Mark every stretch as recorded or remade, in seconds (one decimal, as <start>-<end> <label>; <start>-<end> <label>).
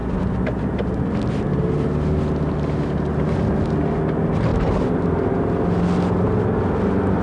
0.0-7.2 recorded